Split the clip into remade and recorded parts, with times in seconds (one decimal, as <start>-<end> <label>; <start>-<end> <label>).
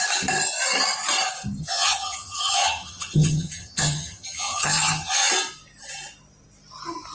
0.0-1.6 recorded; 1.6-5.3 remade; 5.3-7.1 recorded